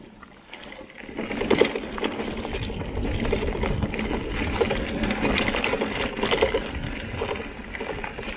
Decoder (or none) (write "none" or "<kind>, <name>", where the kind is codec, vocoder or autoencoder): none